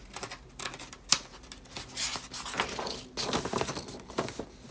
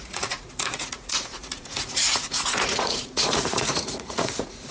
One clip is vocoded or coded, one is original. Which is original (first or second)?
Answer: first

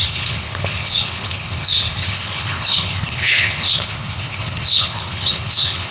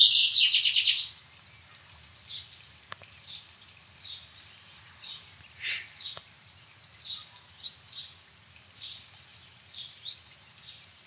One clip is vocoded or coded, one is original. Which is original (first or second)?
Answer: second